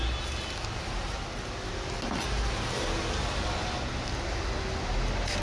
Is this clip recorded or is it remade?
recorded